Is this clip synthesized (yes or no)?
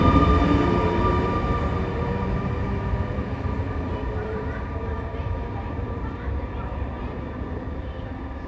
yes